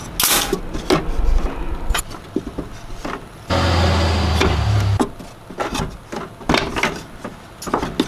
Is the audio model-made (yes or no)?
no